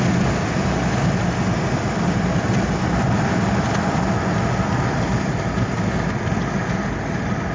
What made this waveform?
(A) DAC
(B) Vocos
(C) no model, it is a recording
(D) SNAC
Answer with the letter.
C